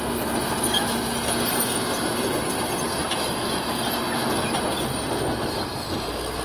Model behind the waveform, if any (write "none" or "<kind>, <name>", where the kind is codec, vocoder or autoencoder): none